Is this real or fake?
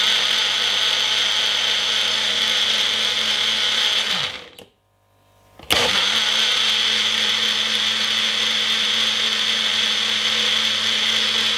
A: real